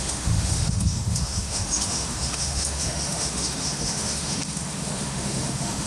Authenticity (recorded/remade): remade